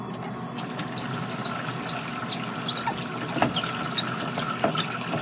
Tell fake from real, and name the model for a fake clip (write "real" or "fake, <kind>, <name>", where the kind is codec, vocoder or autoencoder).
real